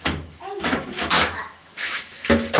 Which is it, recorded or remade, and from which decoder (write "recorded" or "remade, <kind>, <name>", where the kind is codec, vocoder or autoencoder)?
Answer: remade, autoencoder, DAC-VAE